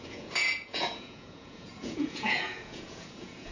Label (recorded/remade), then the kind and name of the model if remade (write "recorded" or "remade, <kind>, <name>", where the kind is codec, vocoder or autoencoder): remade, vocoder, Vocos